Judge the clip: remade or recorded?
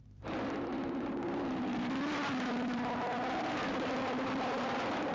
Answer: remade